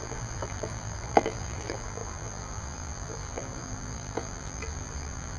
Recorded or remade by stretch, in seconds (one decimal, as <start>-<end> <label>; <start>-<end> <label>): 0.0-5.4 remade

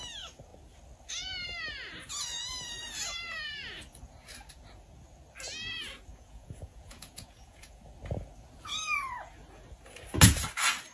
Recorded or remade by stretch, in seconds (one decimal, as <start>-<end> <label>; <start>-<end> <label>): 0.0-6.1 recorded; 6.1-7.8 remade; 7.8-10.9 recorded

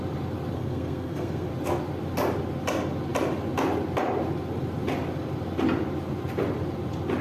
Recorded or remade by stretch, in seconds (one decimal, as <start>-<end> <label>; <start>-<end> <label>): 0.0-0.5 recorded; 0.5-1.5 remade; 1.5-7.2 recorded

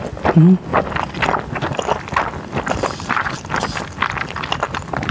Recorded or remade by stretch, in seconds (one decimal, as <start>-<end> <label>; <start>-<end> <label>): 0.0-5.1 recorded

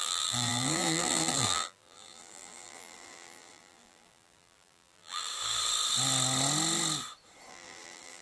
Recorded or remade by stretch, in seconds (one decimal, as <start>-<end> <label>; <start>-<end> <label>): 0.0-5.3 remade; 5.3-7.5 recorded; 7.5-8.2 remade